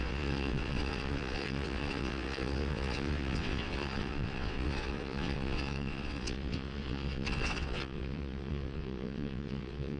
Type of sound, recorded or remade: remade